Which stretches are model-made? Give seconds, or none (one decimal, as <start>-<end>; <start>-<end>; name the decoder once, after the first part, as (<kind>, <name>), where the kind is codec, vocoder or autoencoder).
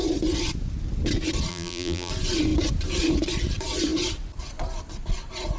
1.5-2.1 (vocoder, BigVGAN v2)